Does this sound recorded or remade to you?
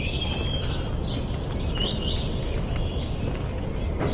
recorded